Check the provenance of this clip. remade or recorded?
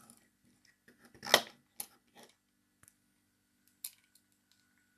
recorded